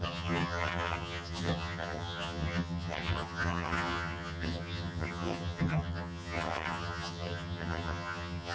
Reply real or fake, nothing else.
fake